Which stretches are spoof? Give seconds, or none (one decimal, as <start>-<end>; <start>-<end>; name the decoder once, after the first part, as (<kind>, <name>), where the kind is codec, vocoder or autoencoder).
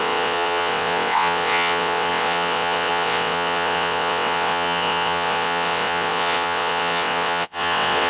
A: 0.0-8.1 (vocoder, WaveNeXt)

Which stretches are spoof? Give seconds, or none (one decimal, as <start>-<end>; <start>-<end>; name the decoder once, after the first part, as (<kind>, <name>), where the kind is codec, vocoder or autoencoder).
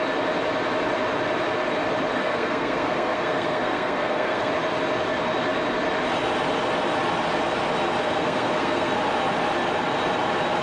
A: 2.2-4.5 (codec, SNAC); 8.0-8.9